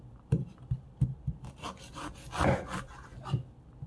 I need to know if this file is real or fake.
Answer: fake